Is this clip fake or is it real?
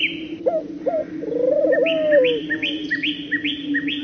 real